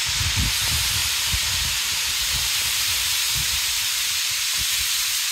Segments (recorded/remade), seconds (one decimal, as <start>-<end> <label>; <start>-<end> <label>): 0.0-1.0 recorded; 1.0-4.2 remade; 4.2-5.3 recorded

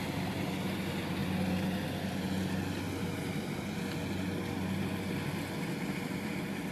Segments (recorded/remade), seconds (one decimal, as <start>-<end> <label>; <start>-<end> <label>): 0.0-6.7 recorded